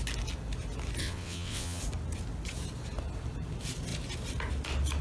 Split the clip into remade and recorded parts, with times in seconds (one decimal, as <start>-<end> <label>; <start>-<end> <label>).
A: 0.0-1.0 recorded; 1.0-1.8 remade; 1.8-5.0 recorded